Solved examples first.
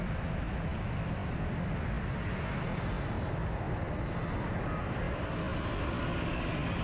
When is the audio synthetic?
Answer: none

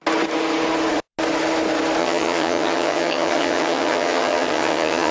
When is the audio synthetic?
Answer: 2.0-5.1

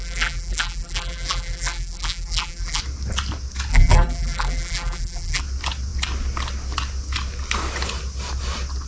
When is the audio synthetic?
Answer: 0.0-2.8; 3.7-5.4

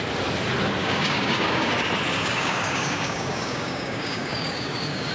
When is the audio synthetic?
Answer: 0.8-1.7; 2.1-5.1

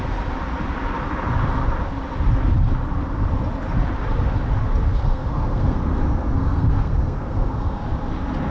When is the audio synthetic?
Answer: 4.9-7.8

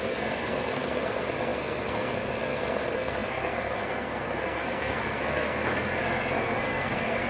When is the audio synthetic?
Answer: 0.0-7.3